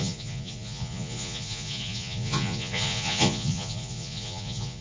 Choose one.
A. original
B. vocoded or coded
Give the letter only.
B